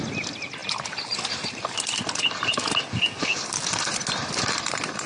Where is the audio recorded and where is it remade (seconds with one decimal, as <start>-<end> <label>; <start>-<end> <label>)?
0.0-5.1 recorded